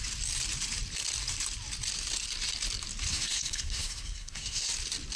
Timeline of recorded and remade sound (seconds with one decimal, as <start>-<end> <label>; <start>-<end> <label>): 0.0-3.1 recorded; 3.1-4.7 remade; 4.7-5.2 recorded

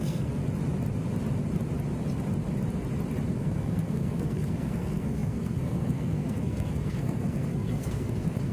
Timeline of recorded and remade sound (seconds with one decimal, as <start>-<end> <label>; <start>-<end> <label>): 0.0-0.4 remade; 0.4-3.3 recorded; 3.3-8.5 remade